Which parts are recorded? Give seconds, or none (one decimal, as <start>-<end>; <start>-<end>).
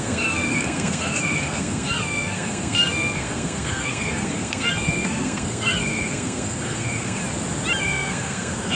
7.2-7.8